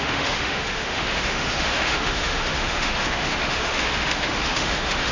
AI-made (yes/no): yes